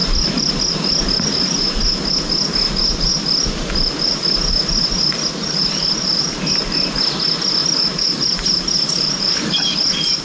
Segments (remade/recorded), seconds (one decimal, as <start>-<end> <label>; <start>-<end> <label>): 0.0-0.5 remade; 0.5-3.1 recorded; 3.1-4.2 remade; 4.2-10.2 recorded